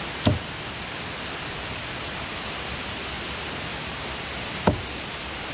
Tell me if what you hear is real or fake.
real